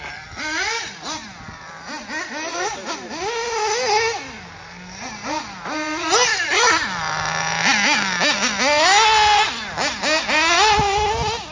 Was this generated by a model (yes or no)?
no